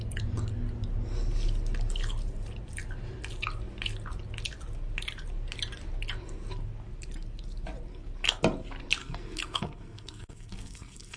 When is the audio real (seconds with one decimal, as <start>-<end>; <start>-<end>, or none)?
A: 0.0-9.0